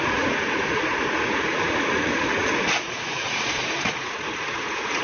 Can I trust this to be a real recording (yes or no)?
no